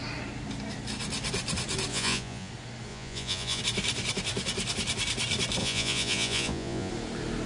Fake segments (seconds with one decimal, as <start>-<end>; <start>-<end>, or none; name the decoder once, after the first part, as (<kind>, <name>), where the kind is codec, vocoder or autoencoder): 1.9-2.5 (vocoder, Vocos); 2.9-3.6; 5.6-6.9